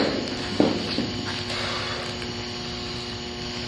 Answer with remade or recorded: recorded